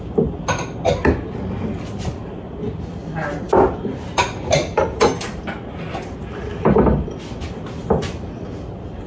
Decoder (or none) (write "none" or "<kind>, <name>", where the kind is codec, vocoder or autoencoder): none